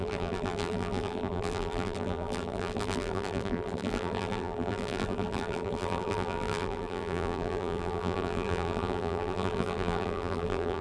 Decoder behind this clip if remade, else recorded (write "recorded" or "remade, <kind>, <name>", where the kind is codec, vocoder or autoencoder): remade, vocoder, BigVGAN v2